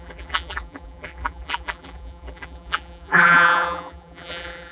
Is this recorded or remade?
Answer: remade